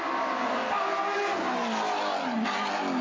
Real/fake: real